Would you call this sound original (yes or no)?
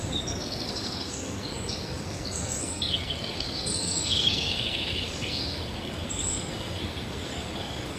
no